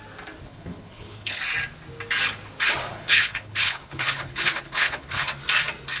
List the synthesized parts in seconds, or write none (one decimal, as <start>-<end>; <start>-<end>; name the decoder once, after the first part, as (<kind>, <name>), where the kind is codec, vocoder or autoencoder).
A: 0.4-1.4 (codec, HILCodec); 2.9-5.3